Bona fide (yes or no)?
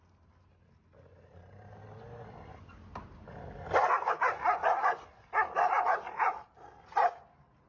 yes